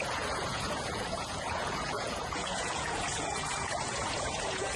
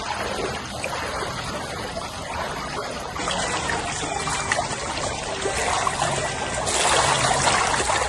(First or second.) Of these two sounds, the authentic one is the second